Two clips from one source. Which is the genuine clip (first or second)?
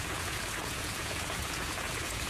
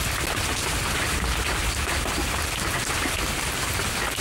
second